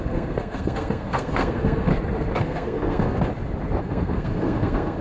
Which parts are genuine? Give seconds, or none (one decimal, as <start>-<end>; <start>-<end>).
1.9-2.4; 3.3-3.8